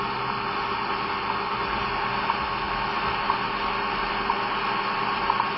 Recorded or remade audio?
recorded